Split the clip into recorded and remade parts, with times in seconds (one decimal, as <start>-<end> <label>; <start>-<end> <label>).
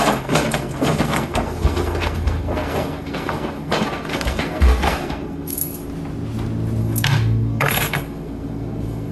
0.0-5.8 remade; 5.8-6.8 recorded; 6.8-9.1 remade